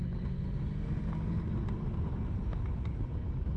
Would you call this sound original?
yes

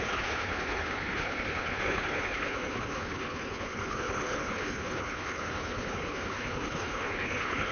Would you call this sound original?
no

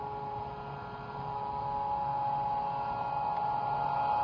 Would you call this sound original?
yes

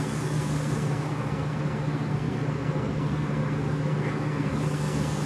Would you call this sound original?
no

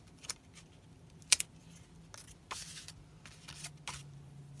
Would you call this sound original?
yes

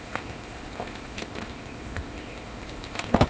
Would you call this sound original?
no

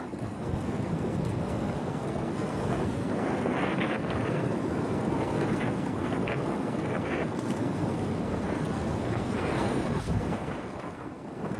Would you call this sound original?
no